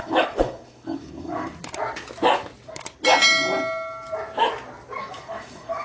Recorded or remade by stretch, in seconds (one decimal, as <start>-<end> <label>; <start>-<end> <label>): 0.0-1.5 remade; 1.5-5.0 recorded; 5.0-5.8 remade